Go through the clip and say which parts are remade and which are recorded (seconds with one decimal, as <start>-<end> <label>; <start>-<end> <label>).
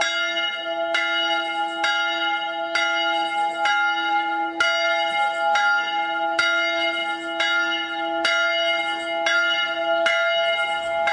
0.0-11.1 recorded